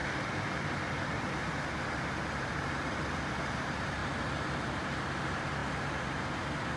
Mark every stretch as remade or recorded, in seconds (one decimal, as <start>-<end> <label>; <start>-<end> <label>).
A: 0.0-1.1 recorded; 1.1-4.0 remade; 4.0-4.7 recorded; 4.7-6.8 remade